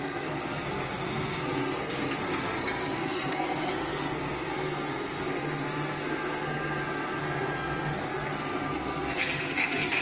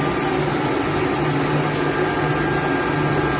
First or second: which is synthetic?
first